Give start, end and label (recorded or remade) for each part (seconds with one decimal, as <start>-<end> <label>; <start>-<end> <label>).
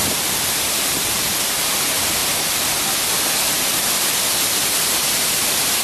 0.0-1.6 remade; 1.6-5.8 recorded